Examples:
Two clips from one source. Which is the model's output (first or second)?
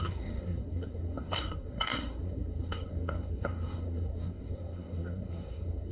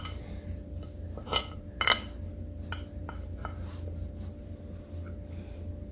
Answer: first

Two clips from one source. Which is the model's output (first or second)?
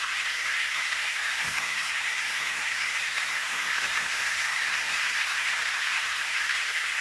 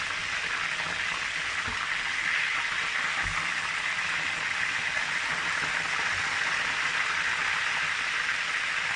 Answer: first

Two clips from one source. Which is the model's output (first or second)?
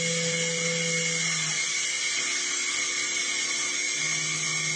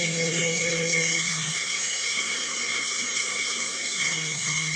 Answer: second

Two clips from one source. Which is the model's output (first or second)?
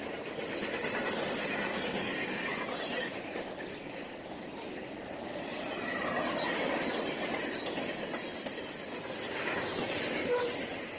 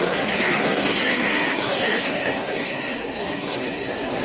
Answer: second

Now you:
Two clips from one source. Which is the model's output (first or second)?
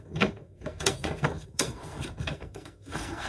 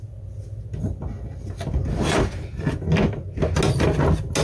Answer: first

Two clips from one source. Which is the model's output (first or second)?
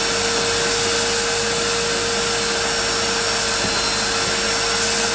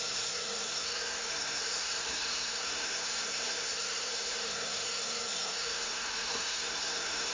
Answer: second